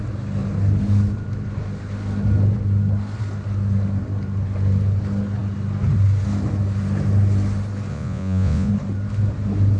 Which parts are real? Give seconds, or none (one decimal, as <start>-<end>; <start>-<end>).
0.0-7.9; 8.7-9.8